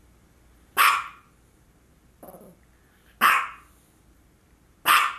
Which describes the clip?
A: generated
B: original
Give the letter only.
B